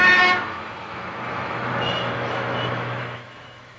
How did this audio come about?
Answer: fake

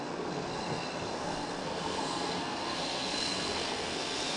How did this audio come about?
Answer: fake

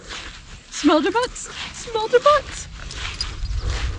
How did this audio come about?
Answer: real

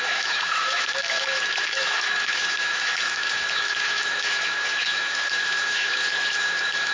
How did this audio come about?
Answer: fake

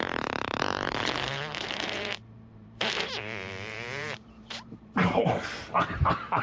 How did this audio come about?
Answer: fake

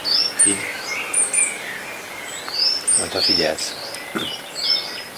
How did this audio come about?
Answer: real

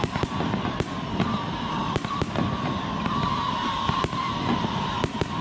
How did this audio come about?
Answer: real